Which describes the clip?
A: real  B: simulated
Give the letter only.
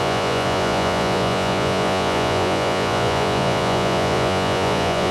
B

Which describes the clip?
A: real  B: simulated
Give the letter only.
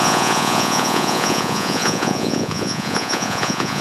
B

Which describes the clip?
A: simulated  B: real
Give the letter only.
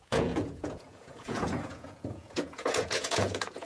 A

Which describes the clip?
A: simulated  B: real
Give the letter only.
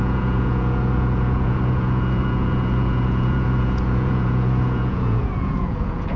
A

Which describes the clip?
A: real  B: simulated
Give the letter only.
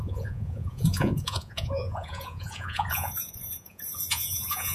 B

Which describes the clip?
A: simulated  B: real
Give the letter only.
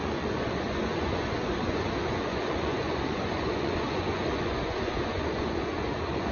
A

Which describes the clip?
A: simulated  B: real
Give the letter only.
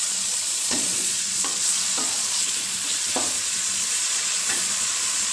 A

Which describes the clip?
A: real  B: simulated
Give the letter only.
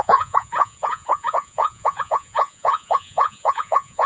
B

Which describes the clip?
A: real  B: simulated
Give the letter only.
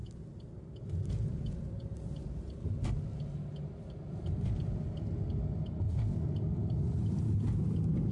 A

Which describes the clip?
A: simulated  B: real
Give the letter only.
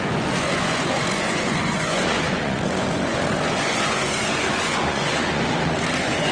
A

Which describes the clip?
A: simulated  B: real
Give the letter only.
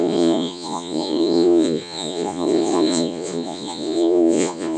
A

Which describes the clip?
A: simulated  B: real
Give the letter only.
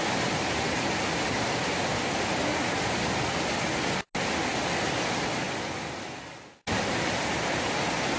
B